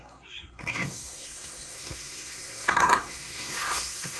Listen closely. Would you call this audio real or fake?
fake